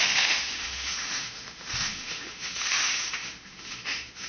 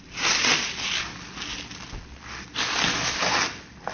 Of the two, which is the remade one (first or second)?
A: first